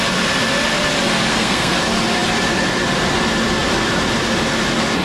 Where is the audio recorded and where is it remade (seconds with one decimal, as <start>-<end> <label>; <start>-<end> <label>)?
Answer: 0.0-1.3 recorded; 1.3-1.8 remade; 1.8-5.0 recorded

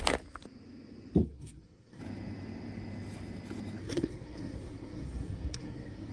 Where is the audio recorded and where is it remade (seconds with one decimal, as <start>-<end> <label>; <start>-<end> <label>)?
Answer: 0.0-1.2 recorded; 1.2-2.0 remade; 2.0-3.8 recorded; 3.8-6.1 remade

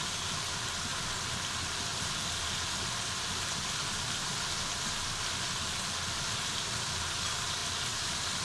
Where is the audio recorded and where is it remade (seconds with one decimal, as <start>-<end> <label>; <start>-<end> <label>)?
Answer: 0.0-8.4 recorded